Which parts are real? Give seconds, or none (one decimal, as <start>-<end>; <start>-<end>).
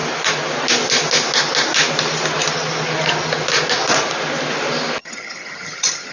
0.0-5.0